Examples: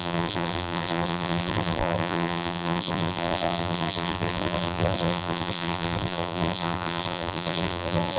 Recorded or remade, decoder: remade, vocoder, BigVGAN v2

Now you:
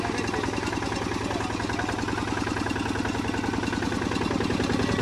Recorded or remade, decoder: recorded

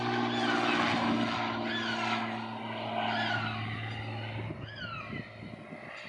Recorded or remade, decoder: recorded